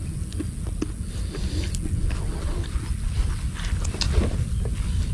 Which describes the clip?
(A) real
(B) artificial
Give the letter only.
A